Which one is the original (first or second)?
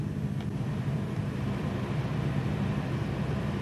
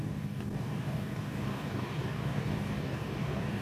first